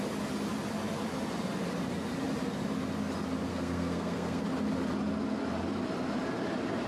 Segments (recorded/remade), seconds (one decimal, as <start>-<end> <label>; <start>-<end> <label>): 0.0-3.5 recorded; 3.5-4.4 remade; 4.4-6.9 recorded